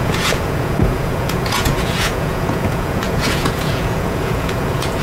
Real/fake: fake